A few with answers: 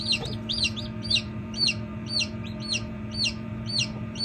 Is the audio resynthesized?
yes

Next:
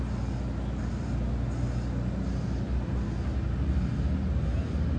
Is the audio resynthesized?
no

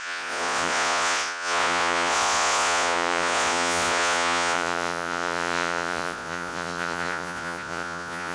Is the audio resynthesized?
yes